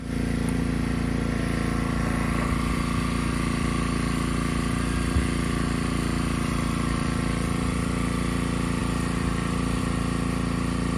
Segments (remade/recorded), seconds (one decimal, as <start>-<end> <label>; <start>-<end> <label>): 0.0-11.0 recorded